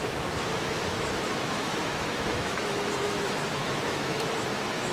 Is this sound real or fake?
fake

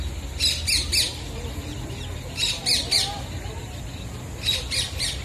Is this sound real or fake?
real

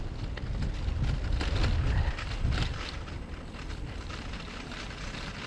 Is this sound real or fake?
real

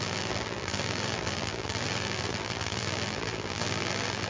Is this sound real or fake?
fake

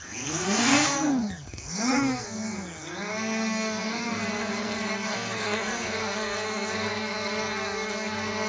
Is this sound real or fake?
fake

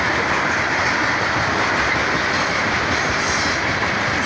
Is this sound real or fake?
real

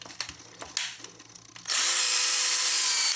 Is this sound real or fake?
real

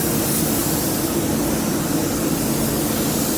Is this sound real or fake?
real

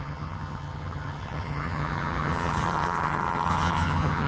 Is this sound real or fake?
fake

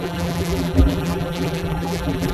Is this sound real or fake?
fake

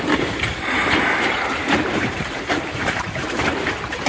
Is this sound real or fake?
fake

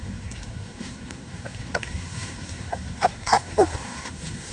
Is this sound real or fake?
fake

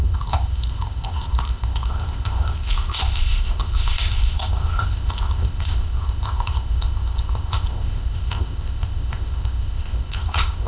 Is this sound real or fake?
fake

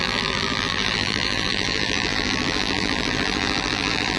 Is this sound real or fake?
fake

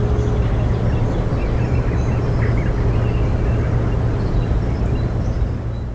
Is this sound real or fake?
real